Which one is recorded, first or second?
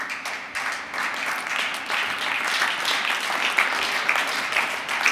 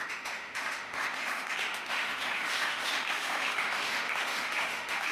first